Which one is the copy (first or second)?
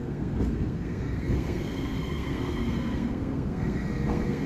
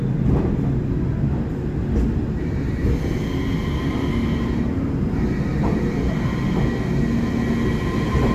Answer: first